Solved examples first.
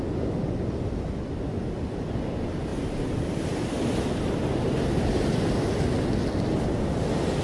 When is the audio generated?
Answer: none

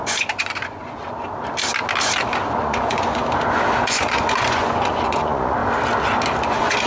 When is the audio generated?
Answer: 0.0-1.0 (vocoder, Vocos); 2.6-3.2; 3.8-5.6; 6.4-6.9

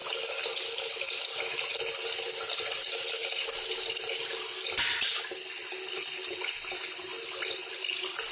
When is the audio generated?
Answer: none

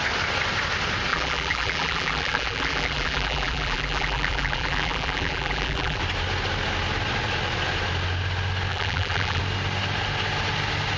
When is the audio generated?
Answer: 1.1-6.0 (vocoder, BigVGAN v2); 8.7-9.4

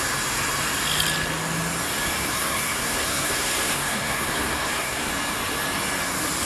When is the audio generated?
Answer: 2.3-5.1 (codec, SNAC)

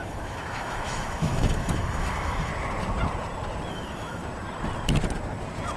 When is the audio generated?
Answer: 0.0-2.5 (autoencoder, DAC-VAE); 3.7-4.2